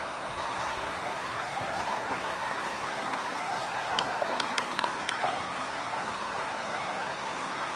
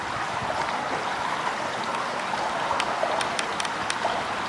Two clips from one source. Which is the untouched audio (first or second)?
second